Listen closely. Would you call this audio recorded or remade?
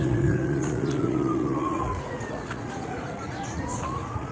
remade